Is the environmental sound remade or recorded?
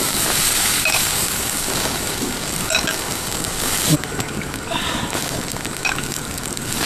remade